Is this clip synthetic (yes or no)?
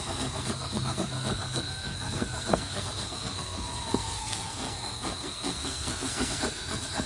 yes